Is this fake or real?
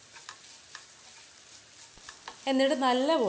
real